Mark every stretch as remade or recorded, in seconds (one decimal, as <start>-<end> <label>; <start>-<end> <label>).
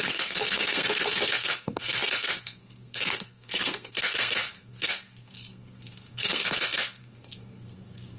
0.0-8.2 remade